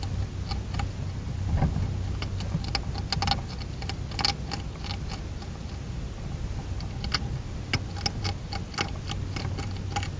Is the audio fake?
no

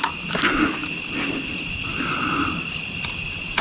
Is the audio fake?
no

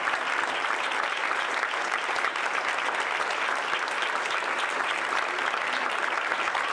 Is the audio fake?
no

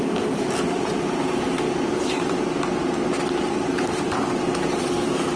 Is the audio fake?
yes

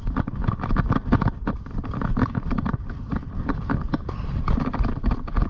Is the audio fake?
no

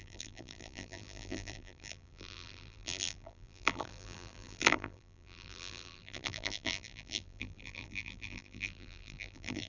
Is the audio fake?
yes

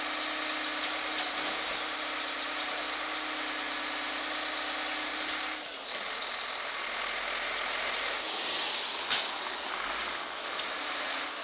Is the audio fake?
no